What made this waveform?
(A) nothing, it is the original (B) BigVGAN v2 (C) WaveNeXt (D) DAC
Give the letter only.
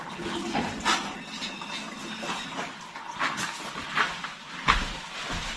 A